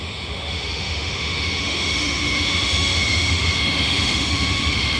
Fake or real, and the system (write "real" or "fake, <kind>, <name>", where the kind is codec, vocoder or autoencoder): fake, autoencoder, DAC-VAE